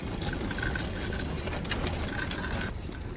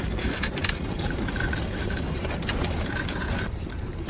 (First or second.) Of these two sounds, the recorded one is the first